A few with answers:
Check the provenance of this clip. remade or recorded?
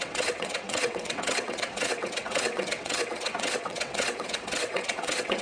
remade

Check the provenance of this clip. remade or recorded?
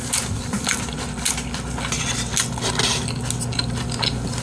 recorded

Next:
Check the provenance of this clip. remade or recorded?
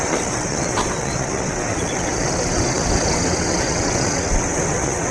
remade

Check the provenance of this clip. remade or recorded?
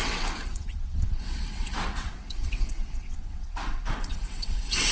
remade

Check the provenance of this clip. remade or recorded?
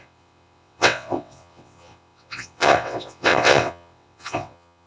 remade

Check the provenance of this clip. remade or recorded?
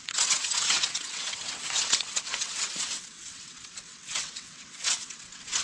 remade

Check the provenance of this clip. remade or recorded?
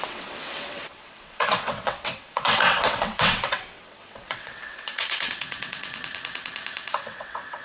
remade